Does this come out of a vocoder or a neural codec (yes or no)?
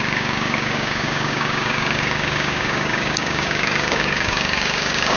yes